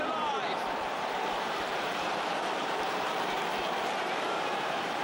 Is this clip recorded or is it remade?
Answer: remade